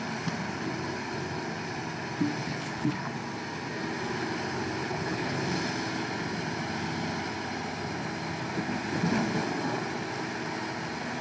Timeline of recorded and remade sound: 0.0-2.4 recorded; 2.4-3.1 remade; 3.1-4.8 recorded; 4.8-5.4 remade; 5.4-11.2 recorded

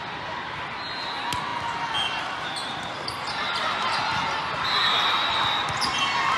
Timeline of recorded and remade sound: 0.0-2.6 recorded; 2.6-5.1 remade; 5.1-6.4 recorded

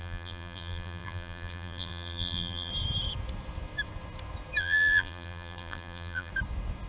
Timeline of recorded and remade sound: 0.0-2.7 remade; 2.7-4.6 recorded; 4.6-6.3 remade; 6.3-6.9 recorded